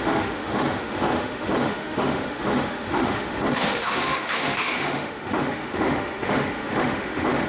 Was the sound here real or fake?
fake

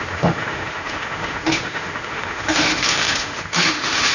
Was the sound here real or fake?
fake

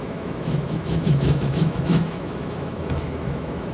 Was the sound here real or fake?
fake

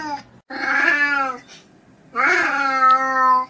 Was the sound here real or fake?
real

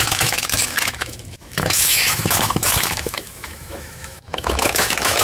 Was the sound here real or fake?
fake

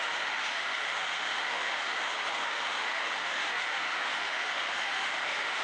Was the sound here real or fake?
fake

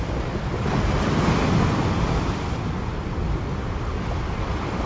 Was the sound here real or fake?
real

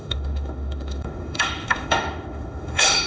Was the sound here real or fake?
fake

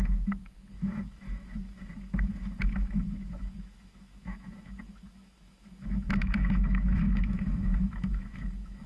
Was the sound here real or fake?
fake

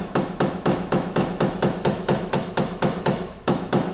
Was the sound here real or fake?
fake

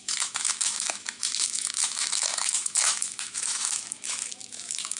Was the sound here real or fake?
fake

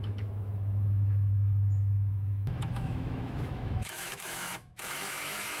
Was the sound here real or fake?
fake